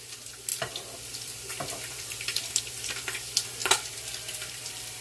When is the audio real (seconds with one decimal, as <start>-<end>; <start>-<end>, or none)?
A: 0.0-0.5; 2.6-3.6